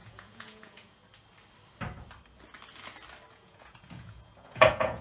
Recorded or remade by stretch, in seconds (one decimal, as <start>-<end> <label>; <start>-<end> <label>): 0.0-1.0 remade; 1.0-3.3 recorded; 3.3-5.0 remade